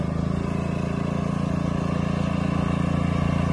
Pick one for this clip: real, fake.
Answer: real